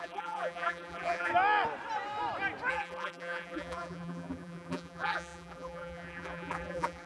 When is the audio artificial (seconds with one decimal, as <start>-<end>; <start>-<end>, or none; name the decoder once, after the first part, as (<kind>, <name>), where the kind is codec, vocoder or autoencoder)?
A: 0.0-1.3 (vocoder, BigVGAN v2); 2.7-7.1